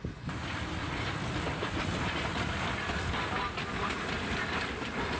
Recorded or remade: recorded